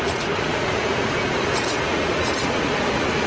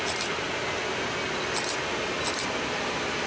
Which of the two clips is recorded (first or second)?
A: second